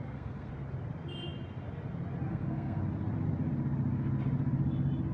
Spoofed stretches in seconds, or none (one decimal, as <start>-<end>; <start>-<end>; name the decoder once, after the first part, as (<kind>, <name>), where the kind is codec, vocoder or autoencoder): 0.0-0.5 (codec, SNAC); 2.3-2.8